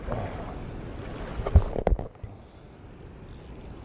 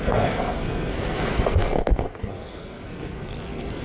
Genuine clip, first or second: first